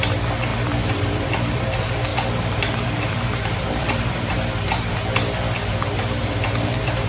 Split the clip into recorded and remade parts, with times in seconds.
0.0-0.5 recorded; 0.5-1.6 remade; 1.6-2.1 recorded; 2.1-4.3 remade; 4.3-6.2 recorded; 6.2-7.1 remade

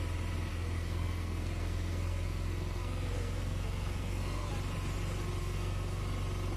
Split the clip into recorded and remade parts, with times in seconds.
0.0-0.5 recorded; 0.5-4.5 remade; 4.5-5.4 recorded; 5.4-6.0 remade; 6.0-6.6 recorded

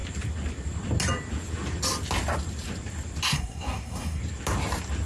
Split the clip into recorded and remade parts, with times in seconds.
0.0-3.3 recorded; 3.3-4.2 remade; 4.2-5.1 recorded

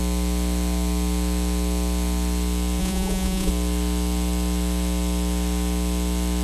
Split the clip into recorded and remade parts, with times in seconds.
0.0-2.8 recorded; 2.8-3.5 remade; 3.5-6.4 recorded

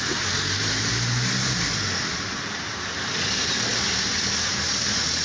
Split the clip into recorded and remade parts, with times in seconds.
0.0-5.2 recorded

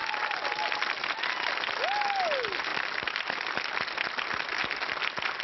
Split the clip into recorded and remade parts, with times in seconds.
0.0-5.4 recorded